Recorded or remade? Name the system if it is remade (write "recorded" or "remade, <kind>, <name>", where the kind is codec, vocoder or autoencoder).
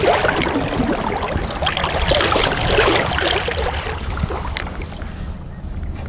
recorded